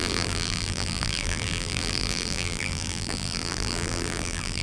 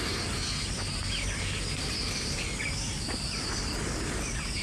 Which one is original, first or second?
second